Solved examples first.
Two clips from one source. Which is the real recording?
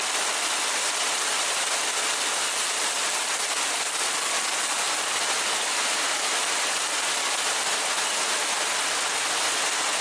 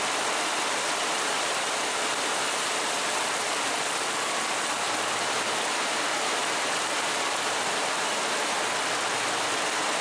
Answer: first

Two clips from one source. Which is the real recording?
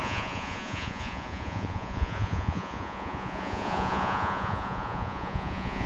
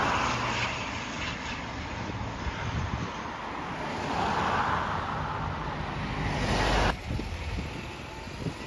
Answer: second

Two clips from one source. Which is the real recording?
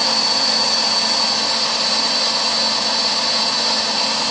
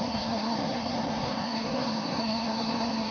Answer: first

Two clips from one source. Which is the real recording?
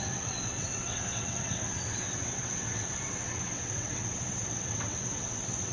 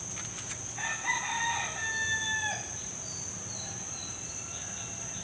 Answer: second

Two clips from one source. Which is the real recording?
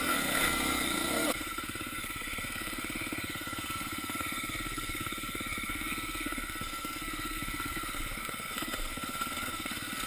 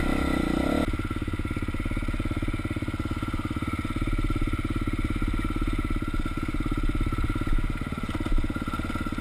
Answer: second